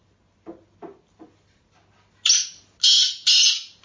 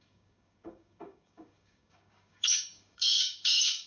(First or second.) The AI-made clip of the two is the second